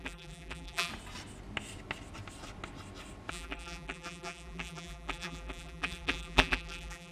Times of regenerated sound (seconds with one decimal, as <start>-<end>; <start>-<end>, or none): 0.0-0.9; 3.3-7.1